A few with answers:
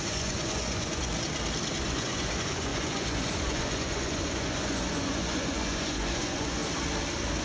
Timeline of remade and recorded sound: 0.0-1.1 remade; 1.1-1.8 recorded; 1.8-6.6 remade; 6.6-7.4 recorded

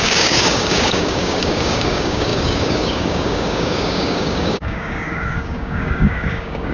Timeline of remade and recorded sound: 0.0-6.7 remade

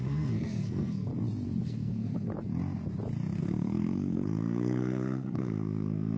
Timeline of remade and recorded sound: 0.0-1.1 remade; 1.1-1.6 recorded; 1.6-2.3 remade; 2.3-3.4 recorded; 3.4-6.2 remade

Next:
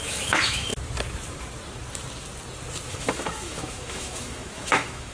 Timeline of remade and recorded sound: 0.0-0.7 remade; 0.7-2.9 recorded; 2.9-5.1 remade

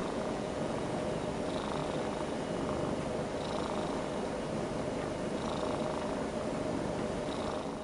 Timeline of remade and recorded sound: 0.0-1.1 remade; 1.1-7.8 recorded

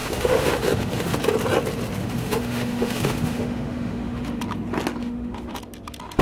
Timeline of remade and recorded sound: 0.0-1.2 remade; 1.2-2.0 recorded; 2.0-4.4 remade; 4.4-5.0 recorded; 5.0-5.6 remade; 5.6-6.2 recorded